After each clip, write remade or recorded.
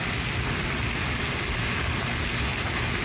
recorded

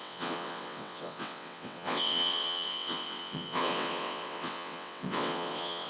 remade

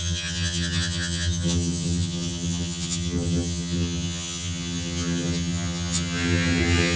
remade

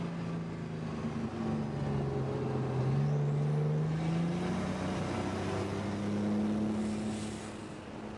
recorded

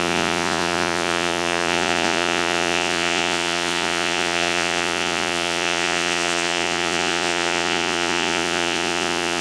remade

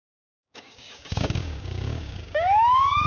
remade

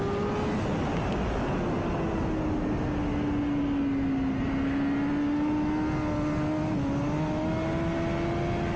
recorded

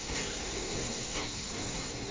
remade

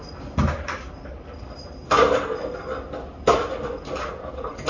recorded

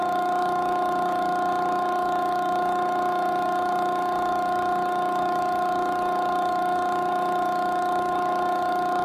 remade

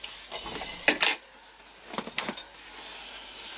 recorded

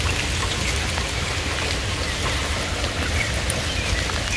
recorded